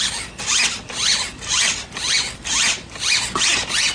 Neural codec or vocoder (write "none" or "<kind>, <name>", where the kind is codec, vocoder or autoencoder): none